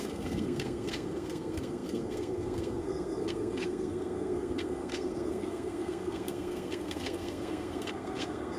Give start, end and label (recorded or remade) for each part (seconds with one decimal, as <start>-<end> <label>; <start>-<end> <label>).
0.0-8.6 remade

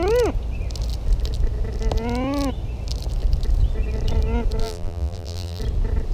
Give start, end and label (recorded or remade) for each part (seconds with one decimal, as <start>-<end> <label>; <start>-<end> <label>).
0.0-4.6 recorded; 4.6-5.6 remade; 5.6-6.1 recorded

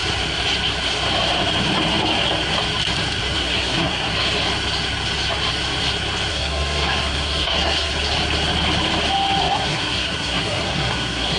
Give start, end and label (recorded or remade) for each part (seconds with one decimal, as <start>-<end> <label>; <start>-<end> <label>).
0.0-3.4 recorded; 3.4-4.1 remade; 4.1-6.3 recorded; 6.3-7.9 remade; 7.9-9.4 recorded; 9.4-11.4 remade

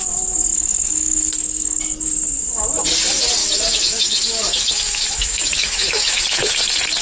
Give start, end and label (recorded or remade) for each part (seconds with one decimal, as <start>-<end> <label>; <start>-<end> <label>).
0.0-0.5 recorded; 0.5-1.8 remade; 1.8-3.4 recorded; 3.4-6.6 remade; 6.6-7.0 recorded

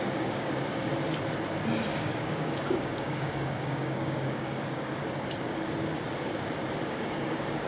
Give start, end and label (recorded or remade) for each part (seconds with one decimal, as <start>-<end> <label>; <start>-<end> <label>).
0.0-0.9 remade; 0.9-1.9 recorded; 1.9-5.0 remade; 5.0-6.8 recorded; 6.8-7.7 remade

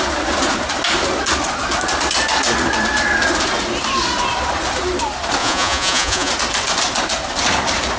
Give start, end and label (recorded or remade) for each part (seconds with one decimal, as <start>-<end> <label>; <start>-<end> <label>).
0.0-5.4 recorded; 5.4-6.3 remade; 6.3-8.0 recorded

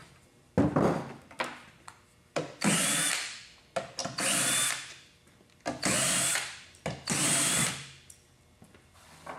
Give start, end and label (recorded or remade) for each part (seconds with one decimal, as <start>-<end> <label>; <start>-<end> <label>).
0.0-6.3 recorded; 6.3-9.4 remade